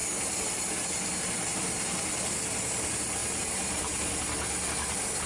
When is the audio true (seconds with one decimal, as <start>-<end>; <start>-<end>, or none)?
0.0-1.5; 2.1-3.2; 4.2-5.3